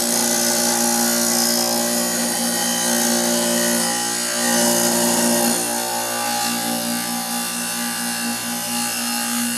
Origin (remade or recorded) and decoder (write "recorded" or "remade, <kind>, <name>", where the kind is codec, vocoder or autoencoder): recorded